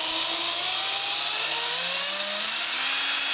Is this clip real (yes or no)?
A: yes